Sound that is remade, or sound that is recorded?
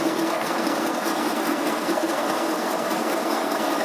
remade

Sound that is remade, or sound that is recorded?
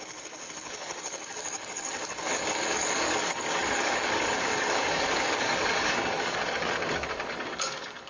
remade